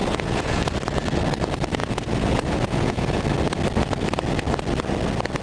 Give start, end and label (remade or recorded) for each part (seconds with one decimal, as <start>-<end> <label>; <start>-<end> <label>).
0.0-0.6 remade; 0.6-1.8 recorded; 1.8-3.2 remade; 3.2-5.4 recorded